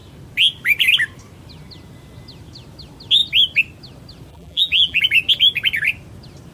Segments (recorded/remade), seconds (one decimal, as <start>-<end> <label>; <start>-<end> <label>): 0.0-4.3 recorded; 4.3-5.0 remade; 5.0-6.5 recorded